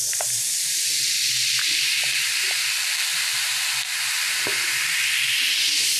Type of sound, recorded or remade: remade